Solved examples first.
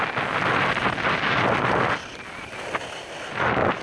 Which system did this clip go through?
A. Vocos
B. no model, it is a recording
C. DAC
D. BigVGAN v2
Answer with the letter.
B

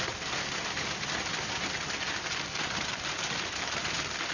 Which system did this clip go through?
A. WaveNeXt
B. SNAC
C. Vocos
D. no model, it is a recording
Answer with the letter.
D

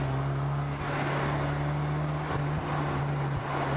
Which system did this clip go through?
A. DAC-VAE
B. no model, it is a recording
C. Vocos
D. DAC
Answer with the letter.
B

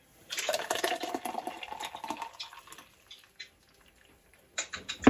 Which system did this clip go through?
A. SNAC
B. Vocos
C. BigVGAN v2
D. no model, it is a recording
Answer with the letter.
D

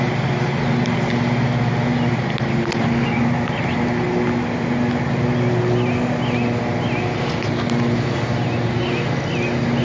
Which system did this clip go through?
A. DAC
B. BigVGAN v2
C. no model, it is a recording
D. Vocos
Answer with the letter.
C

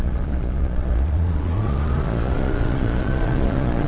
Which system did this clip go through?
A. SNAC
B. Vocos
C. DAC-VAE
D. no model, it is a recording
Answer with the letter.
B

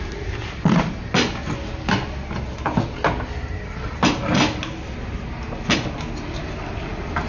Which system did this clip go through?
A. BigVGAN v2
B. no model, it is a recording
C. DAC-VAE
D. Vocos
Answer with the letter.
B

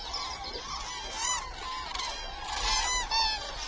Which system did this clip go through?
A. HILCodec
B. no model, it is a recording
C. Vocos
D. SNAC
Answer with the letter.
B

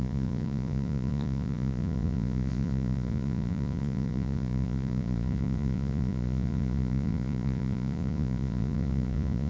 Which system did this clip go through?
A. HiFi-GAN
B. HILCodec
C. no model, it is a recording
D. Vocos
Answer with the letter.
D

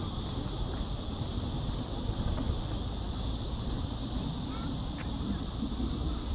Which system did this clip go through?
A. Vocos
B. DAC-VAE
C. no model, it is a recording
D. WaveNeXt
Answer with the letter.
C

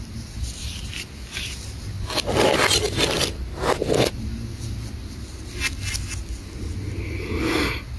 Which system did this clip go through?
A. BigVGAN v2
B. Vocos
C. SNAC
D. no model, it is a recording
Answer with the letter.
D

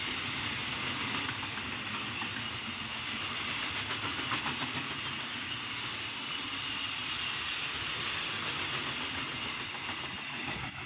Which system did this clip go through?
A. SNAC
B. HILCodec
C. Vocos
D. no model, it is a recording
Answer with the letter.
D